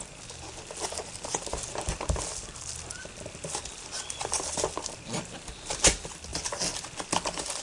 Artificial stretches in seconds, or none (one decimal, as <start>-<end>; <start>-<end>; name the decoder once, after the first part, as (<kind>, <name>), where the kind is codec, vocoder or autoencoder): none